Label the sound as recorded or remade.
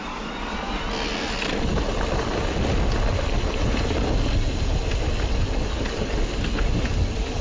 recorded